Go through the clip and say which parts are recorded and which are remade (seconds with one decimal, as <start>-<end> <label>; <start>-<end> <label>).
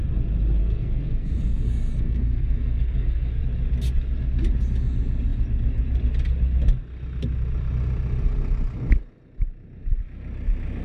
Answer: 0.0-0.6 recorded; 0.6-3.4 remade; 3.4-10.8 recorded